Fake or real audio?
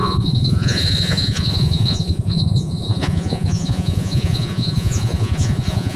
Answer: fake